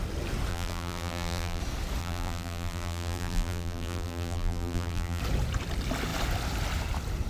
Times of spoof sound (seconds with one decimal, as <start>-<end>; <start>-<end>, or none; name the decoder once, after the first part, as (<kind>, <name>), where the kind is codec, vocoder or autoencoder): 0.5-1.6 (vocoder, BigVGAN v2); 2.0-5.2